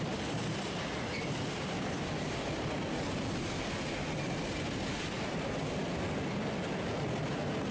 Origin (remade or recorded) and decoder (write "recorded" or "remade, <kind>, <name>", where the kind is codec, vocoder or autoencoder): recorded